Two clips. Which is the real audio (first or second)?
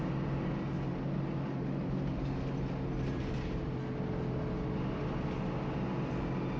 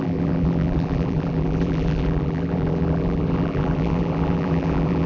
first